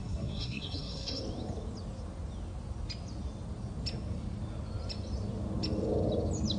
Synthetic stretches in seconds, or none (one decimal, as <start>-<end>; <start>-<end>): 0.0-1.2